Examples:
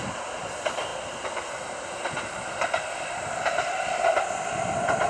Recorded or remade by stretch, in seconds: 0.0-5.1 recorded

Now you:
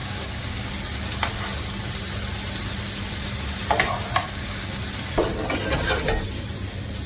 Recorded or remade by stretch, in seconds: 0.0-0.7 remade; 0.7-4.2 recorded; 4.2-4.8 remade; 4.8-7.1 recorded

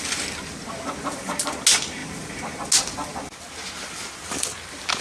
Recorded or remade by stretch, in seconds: 0.0-5.0 recorded

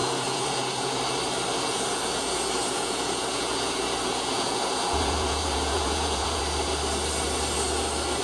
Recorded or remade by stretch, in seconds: 0.0-1.0 remade; 1.0-1.5 recorded; 1.5-6.4 remade; 6.4-8.2 recorded

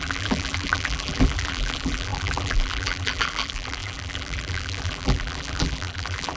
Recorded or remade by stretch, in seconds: 0.0-6.4 remade

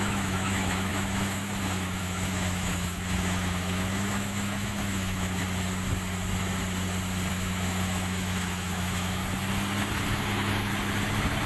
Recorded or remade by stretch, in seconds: 0.0-5.4 remade; 5.4-7.3 recorded; 7.3-9.2 remade; 9.2-9.9 recorded; 9.9-10.7 remade; 10.7-11.5 recorded